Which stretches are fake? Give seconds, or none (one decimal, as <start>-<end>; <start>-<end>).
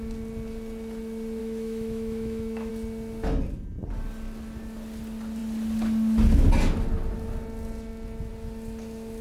1.4-2.7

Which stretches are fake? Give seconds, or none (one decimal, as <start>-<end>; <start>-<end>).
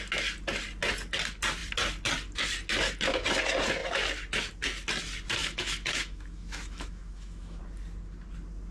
5.4-7.6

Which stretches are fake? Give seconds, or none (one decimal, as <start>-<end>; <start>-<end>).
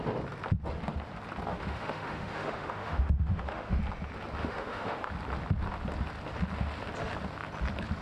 1.5-3.8; 4.4-5.1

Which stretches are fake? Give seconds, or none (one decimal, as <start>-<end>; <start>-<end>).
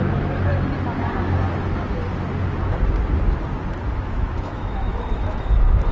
0.0-0.5; 4.0-5.9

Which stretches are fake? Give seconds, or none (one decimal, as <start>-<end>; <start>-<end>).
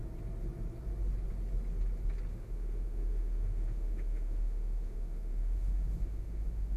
2.3-6.8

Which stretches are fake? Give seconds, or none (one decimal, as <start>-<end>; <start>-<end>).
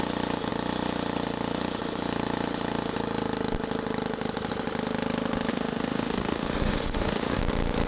5.5-7.4